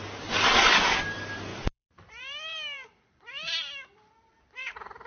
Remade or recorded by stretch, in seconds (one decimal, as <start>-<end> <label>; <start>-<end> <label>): 0.0-1.5 recorded; 1.5-4.4 remade; 4.4-5.1 recorded